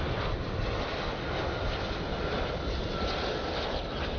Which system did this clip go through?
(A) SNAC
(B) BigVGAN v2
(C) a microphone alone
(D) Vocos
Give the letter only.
C